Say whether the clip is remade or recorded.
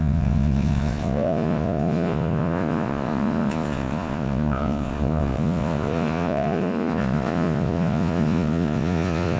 remade